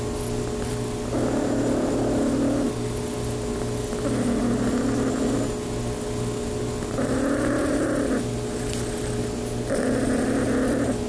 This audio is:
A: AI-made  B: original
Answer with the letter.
B